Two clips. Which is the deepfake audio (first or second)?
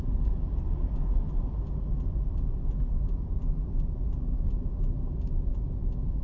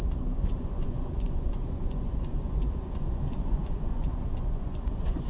second